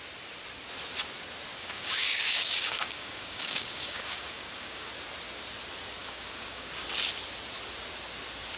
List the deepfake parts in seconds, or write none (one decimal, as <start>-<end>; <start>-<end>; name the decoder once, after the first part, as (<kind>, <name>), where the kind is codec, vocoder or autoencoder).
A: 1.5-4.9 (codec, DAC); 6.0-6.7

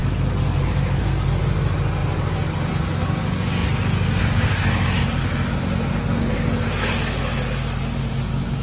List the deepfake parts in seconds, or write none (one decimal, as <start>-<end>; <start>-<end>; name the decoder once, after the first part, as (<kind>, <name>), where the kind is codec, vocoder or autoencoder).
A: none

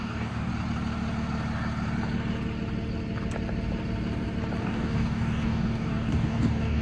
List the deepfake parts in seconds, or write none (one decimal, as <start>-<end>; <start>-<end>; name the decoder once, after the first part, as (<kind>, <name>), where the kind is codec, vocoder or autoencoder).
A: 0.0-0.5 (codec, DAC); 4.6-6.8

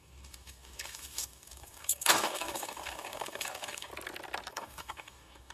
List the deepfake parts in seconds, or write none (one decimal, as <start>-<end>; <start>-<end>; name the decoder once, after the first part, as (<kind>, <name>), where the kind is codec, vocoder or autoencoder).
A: 0.0-3.9 (codec, DAC); 4.5-5.5